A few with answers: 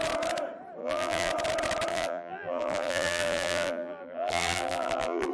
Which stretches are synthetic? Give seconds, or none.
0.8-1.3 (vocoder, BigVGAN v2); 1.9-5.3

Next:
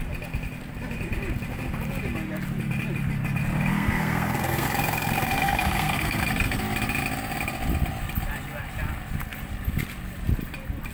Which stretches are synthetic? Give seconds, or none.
3.7-6.6 (codec, SNAC)

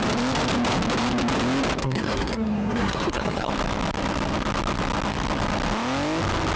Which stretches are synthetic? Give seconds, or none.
1.8-3.5 (codec, SNAC)

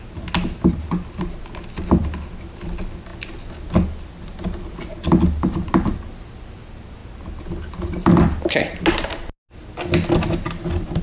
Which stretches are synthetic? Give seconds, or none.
none

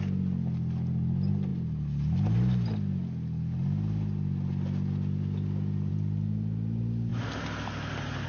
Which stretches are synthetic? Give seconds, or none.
none

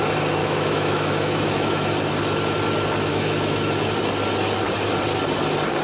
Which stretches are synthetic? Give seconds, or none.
0.4-1.9 (autoencoder, DAC-VAE); 3.1-3.7

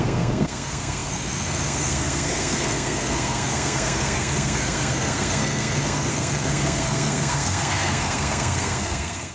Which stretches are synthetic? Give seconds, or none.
0.0-9.3 (codec, SNAC)